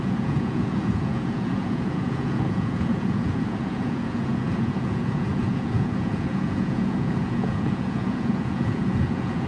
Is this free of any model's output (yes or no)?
no